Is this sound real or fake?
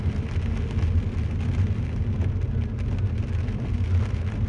real